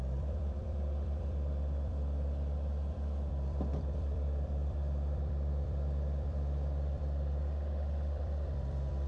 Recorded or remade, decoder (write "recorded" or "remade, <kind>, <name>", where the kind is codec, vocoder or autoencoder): remade, vocoder, BigVGAN v2